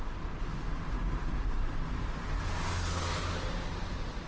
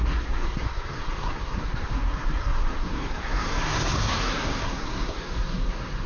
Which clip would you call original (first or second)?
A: first